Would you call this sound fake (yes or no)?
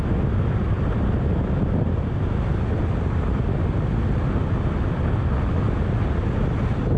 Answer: no